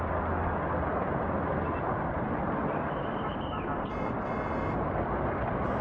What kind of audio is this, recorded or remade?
recorded